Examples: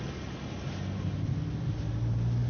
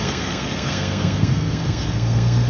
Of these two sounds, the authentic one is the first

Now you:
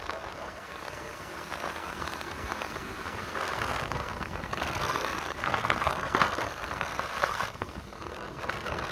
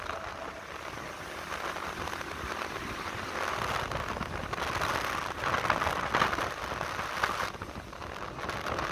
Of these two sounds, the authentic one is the second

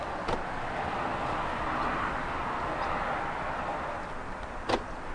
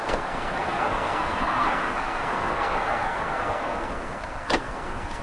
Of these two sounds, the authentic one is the first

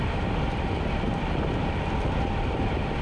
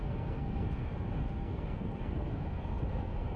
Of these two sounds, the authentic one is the first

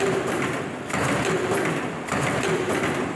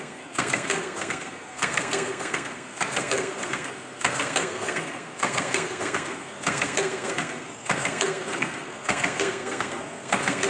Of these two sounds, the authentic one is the first